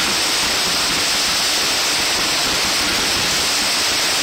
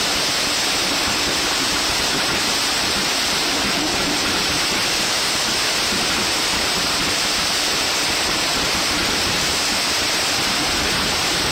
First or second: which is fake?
second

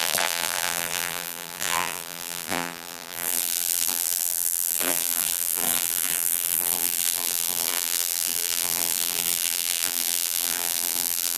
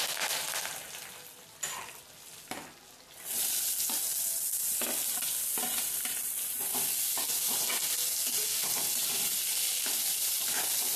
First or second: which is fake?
first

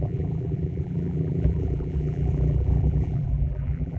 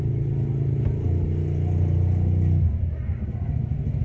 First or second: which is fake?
first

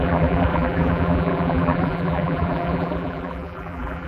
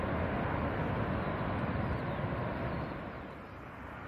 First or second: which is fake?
first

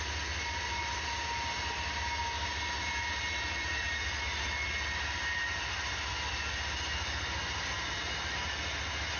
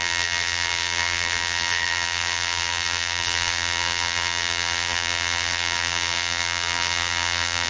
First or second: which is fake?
second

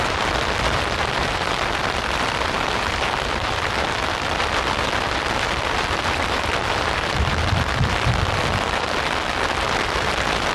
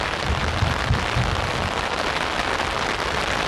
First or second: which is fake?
first